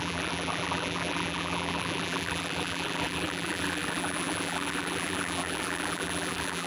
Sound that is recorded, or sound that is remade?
remade